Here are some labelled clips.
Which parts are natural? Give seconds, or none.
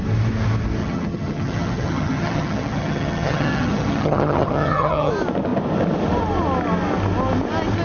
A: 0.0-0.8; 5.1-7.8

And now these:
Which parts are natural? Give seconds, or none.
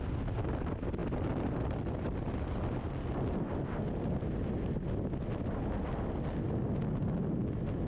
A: 0.0-7.9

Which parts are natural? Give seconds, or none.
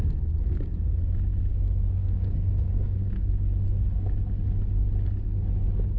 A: 0.0-2.0; 3.3-6.0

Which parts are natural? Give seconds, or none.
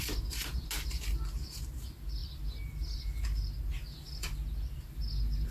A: 0.0-5.5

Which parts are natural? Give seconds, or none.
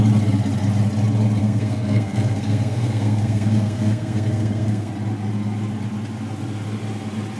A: 0.0-1.4; 4.9-7.4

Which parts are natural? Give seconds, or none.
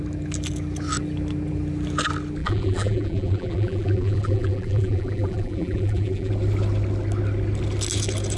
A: 0.0-2.4; 6.3-8.4